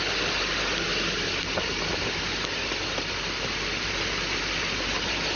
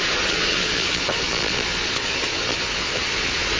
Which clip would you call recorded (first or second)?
first